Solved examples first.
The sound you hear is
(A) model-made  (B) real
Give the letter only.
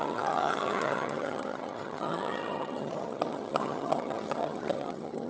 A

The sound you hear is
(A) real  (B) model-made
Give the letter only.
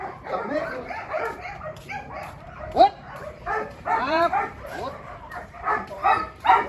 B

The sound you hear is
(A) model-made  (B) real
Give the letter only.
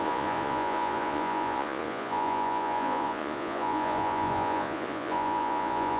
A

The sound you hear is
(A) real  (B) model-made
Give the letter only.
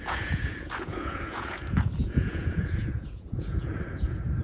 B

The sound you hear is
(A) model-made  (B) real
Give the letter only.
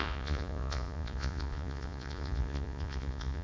A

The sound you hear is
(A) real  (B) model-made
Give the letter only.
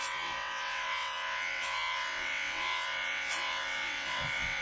B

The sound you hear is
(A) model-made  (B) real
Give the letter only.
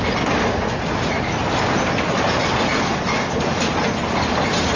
B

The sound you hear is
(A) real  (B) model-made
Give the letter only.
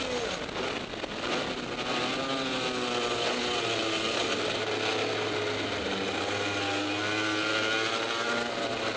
A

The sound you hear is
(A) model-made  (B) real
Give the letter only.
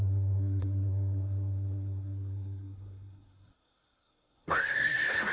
A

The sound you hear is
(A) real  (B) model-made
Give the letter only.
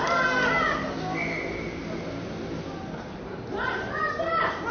A